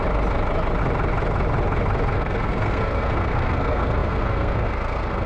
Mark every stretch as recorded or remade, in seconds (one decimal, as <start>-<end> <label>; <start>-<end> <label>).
0.0-2.1 recorded; 2.1-5.3 remade